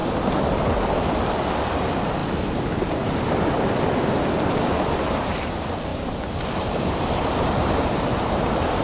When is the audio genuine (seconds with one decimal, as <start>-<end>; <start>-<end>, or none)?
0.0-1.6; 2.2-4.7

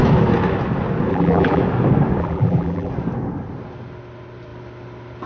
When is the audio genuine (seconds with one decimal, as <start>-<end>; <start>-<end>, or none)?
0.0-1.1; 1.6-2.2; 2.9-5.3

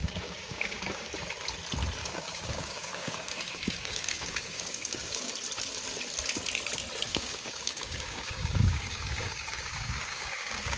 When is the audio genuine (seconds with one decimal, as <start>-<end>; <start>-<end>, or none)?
1.1-2.0; 5.3-7.1

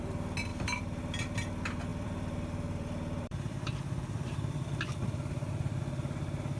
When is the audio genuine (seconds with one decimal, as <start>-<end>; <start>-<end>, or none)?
0.0-0.5; 1.0-1.9; 5.8-6.6

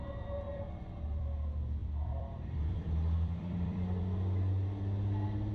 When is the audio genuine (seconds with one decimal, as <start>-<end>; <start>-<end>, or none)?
1.2-1.8; 4.0-5.5

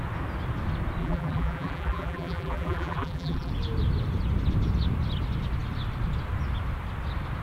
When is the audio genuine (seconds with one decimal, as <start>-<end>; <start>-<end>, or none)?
0.0-1.0; 3.5-7.4

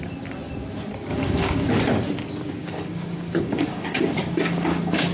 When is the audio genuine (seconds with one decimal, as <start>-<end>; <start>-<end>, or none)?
0.0-1.1; 1.7-2.6